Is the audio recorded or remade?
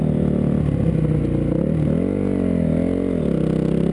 recorded